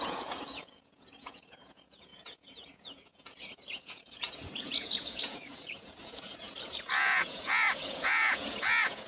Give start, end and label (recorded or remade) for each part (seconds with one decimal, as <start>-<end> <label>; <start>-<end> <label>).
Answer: 0.0-9.1 remade